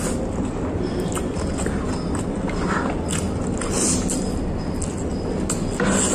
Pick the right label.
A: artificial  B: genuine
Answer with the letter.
B